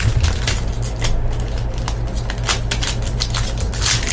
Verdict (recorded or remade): recorded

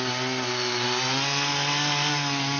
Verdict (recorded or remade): recorded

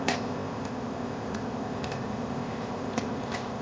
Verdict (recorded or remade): remade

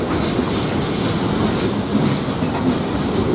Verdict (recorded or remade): recorded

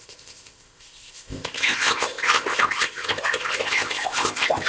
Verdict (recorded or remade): remade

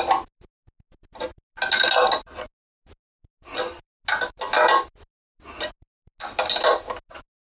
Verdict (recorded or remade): recorded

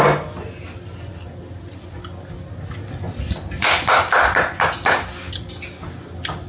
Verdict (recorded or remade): recorded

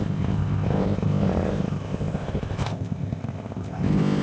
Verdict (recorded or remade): remade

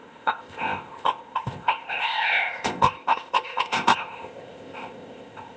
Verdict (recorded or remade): remade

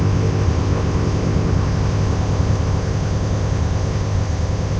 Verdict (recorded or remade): remade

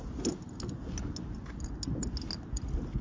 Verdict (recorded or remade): recorded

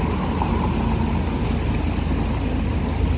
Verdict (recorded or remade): recorded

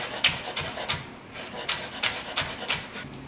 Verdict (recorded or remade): recorded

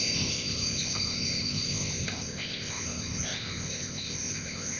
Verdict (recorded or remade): remade